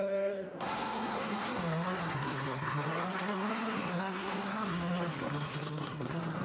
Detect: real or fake fake